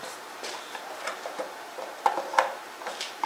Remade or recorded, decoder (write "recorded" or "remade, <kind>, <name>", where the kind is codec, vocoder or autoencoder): remade, vocoder, BigVGAN v2